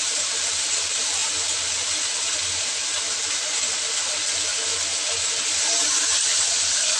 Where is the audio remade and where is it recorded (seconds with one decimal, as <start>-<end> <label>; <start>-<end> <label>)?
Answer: 0.0-7.0 recorded